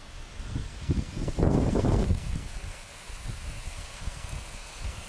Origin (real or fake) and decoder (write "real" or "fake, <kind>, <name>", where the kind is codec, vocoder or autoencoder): fake, codec, SNAC